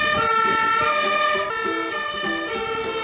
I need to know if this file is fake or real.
real